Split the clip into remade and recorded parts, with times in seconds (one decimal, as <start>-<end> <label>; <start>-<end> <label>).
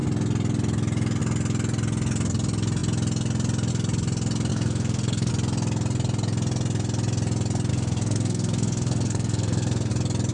0.0-4.5 recorded; 4.5-5.3 remade; 5.3-7.7 recorded; 7.7-9.9 remade; 9.9-10.3 recorded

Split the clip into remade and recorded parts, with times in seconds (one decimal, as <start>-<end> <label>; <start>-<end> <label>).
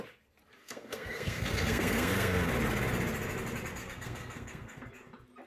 0.0-0.6 recorded; 0.6-2.5 remade; 2.5-3.8 recorded; 3.8-4.9 remade; 4.9-5.5 recorded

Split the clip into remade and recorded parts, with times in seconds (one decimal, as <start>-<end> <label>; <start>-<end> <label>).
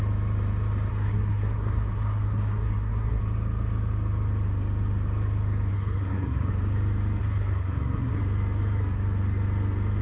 0.0-0.9 recorded; 0.9-3.2 remade; 3.2-5.7 recorded; 5.7-6.5 remade; 6.5-7.2 recorded; 7.2-8.2 remade; 8.2-10.0 recorded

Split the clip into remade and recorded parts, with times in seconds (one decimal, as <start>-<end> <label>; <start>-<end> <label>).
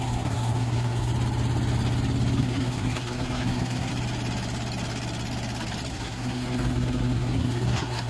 0.0-1.1 remade; 1.1-2.4 recorded; 2.4-3.9 remade; 3.9-5.9 recorded; 5.9-8.1 remade